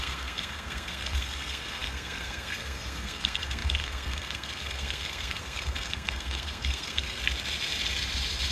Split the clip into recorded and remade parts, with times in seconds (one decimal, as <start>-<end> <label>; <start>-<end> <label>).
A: 0.0-7.2 remade; 7.2-8.5 recorded